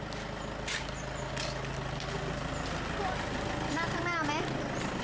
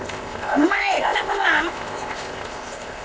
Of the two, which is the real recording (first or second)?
first